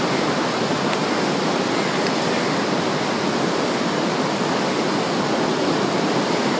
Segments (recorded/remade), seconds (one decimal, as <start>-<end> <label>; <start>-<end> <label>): 0.0-6.6 recorded